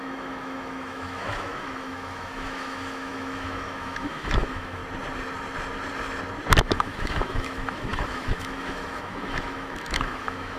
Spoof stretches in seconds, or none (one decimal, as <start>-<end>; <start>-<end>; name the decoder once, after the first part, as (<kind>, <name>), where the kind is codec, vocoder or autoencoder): 0.0-4.8 (autoencoder, DAC-VAE); 6.6-10.6